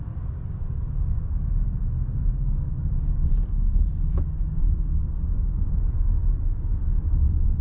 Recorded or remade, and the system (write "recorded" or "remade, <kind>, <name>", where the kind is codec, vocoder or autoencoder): recorded